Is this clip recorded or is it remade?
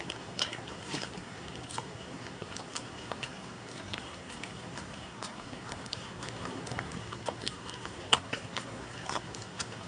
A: remade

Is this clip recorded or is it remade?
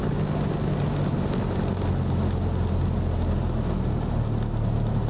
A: recorded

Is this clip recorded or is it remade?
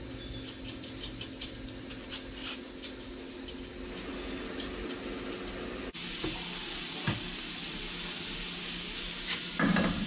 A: recorded